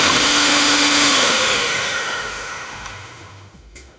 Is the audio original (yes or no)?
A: no